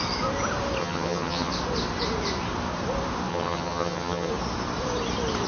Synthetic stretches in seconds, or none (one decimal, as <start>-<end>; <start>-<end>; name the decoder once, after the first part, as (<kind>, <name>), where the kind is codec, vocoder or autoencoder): 0.8-1.5 (vocoder, HiFi-GAN); 3.3-4.3